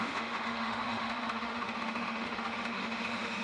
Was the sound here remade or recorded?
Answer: remade